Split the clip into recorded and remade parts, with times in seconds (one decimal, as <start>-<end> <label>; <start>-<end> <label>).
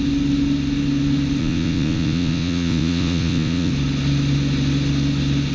0.0-1.4 recorded; 1.4-3.7 remade; 3.7-5.5 recorded